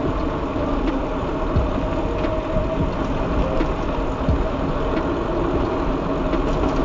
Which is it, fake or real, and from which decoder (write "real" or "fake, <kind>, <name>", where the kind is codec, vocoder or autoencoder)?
real